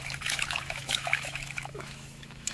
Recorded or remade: remade